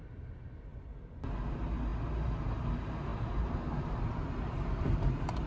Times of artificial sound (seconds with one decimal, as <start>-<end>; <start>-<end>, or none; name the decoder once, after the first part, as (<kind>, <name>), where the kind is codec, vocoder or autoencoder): none